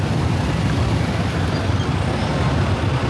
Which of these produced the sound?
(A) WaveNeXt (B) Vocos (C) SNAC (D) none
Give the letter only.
D